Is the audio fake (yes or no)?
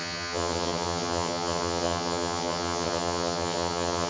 yes